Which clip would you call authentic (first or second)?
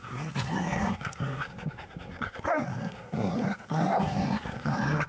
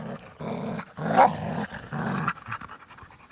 second